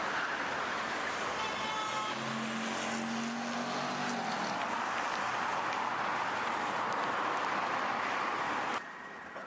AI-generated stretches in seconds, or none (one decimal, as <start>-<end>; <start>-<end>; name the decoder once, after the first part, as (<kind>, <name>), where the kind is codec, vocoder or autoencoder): none